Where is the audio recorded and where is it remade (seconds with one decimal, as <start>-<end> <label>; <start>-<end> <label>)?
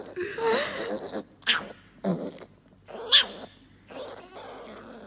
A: 0.0-5.1 recorded